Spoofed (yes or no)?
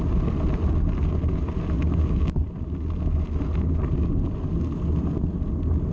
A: no